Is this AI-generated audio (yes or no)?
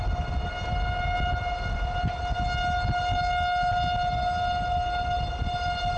no